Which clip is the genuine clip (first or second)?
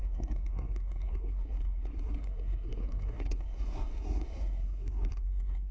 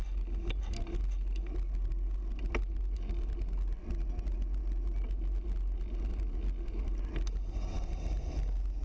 second